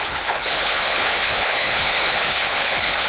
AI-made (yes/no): yes